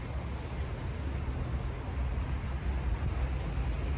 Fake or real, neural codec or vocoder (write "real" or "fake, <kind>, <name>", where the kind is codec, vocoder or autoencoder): real